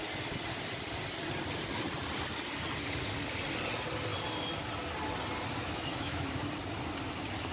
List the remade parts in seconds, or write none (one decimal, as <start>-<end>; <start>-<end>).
5.6-6.3